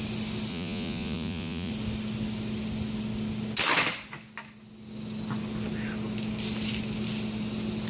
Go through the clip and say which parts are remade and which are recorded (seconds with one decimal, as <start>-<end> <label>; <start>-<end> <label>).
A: 0.0-0.5 recorded; 0.5-1.7 remade; 1.7-7.9 recorded